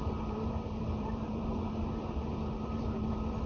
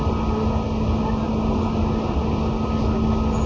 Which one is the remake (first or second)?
first